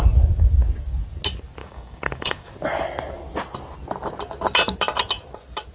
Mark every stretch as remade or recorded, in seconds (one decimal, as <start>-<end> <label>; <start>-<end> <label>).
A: 0.0-1.6 recorded; 1.6-2.5 remade; 2.5-5.7 recorded